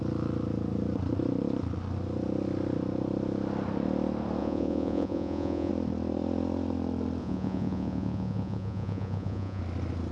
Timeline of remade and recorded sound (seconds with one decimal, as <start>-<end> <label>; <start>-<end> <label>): 0.0-4.4 recorded; 4.4-5.7 remade; 5.7-7.2 recorded; 7.2-9.6 remade; 9.6-10.1 recorded